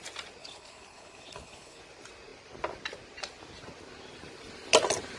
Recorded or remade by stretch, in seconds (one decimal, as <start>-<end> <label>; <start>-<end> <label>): 0.0-0.4 recorded; 0.4-1.8 remade; 1.8-5.2 recorded

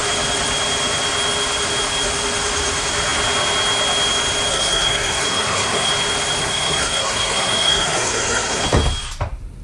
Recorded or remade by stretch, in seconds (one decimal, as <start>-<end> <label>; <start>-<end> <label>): 0.0-4.5 recorded; 4.5-5.9 remade; 5.9-6.4 recorded; 6.4-8.6 remade; 8.6-9.6 recorded

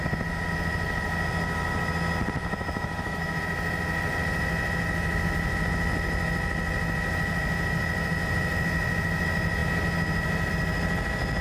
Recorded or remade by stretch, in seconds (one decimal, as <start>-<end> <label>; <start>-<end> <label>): 0.0-2.4 recorded; 2.4-3.4 remade; 3.4-11.4 recorded